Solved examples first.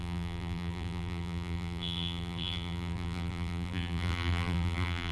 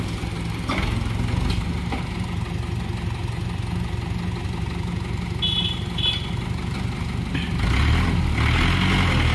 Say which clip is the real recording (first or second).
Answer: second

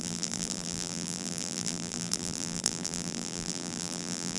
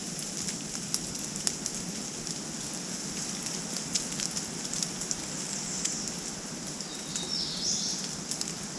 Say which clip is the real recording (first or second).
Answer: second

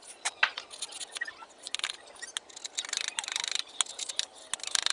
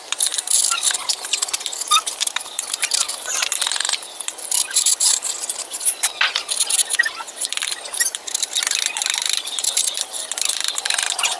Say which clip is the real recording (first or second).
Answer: first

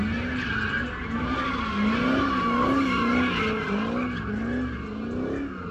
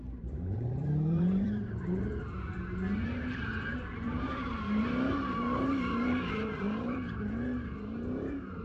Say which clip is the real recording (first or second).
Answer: first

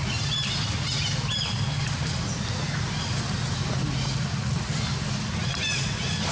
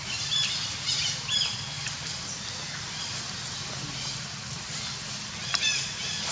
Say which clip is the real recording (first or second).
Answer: first